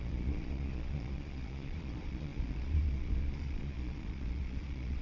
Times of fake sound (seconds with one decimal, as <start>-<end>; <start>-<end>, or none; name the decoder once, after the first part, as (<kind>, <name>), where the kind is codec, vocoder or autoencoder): 0.0-5.0 (vocoder, Vocos)